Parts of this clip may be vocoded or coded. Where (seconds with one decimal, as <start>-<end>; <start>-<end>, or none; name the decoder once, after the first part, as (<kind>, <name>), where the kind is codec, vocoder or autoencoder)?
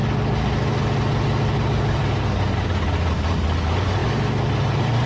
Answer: none